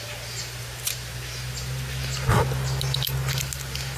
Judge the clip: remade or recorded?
recorded